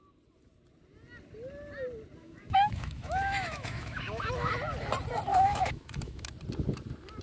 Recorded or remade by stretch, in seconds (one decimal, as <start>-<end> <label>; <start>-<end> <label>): 0.0-2.2 recorded; 2.2-4.5 remade; 4.5-5.3 recorded; 5.3-6.3 remade; 6.3-7.2 recorded